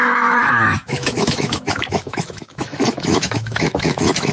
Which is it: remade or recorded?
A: remade